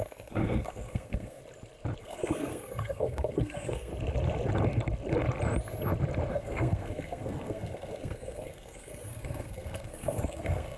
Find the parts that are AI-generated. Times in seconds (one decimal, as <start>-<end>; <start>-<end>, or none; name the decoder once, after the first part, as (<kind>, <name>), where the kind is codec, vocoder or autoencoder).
0.0-1.4 (codec, SNAC); 2.0-3.9; 6.3-10.8